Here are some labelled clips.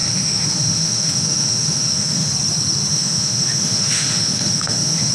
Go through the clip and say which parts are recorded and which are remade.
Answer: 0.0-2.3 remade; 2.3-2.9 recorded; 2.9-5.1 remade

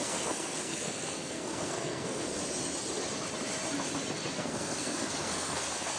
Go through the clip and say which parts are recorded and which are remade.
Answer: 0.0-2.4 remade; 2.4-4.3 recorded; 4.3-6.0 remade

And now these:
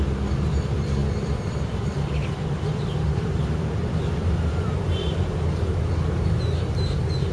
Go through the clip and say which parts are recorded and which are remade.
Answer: 0.0-1.0 recorded; 1.0-5.3 remade; 5.3-7.3 recorded

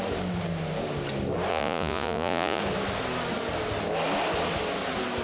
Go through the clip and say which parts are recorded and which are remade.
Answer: 0.0-1.5 recorded; 1.5-2.6 remade; 2.6-5.2 recorded

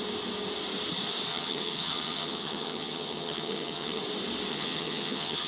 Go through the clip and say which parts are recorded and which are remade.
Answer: 0.0-1.3 recorded; 1.3-4.0 remade; 4.0-4.5 recorded; 4.5-5.5 remade